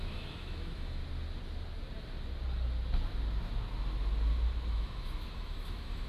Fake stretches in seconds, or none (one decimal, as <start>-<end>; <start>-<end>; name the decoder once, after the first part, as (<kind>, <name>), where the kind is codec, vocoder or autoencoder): 0.0-1.0 (autoencoder, DAC-VAE); 4.7-6.1

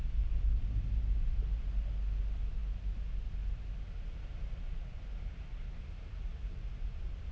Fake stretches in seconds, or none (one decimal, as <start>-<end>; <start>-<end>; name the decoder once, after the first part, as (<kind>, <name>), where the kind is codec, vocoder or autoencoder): none